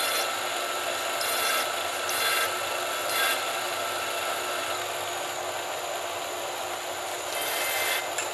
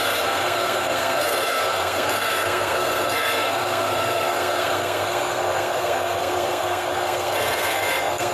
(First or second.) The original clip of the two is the first